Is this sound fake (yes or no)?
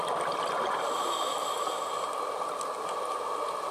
no